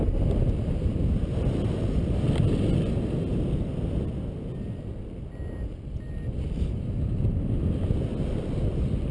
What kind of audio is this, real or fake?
real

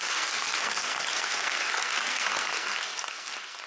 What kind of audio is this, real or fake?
fake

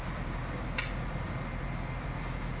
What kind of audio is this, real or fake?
real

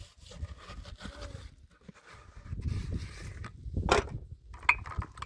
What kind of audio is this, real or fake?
real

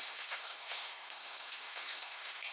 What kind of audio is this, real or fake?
fake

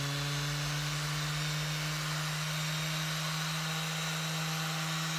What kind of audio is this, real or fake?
real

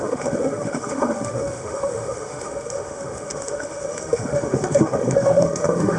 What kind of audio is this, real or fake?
fake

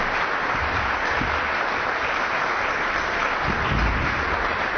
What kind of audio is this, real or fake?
real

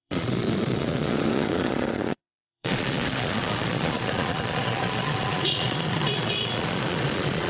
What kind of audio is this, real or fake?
fake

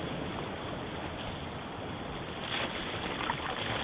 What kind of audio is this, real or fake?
real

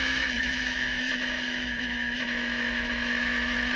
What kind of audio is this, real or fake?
fake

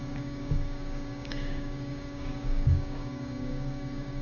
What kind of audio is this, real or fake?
fake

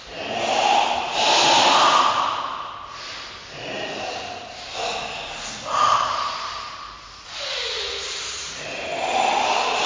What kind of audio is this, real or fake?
real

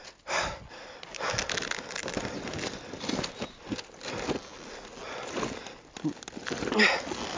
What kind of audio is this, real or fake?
real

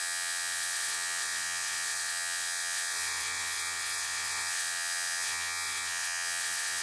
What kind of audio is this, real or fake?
fake